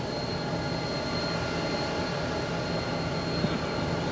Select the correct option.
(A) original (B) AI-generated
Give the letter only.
A